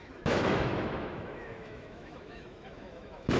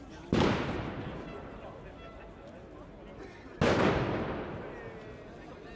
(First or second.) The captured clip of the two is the second